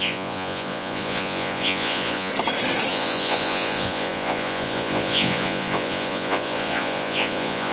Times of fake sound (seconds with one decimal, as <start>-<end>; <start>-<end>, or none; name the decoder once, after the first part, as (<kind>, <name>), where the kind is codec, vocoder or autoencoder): 0.0-2.3 (vocoder, Vocos); 2.9-7.7